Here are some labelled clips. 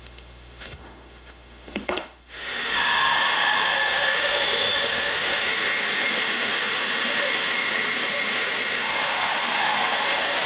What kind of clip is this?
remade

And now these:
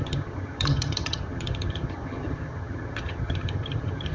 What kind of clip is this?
remade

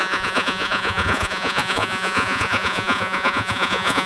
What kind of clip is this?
remade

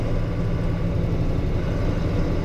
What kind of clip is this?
recorded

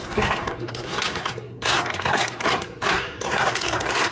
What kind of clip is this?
remade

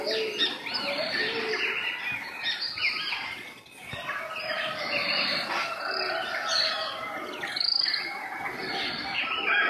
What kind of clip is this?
recorded